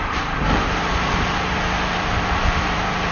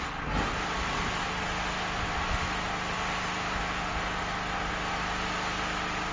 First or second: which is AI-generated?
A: first